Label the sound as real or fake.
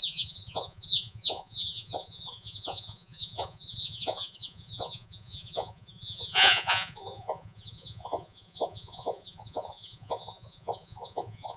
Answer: fake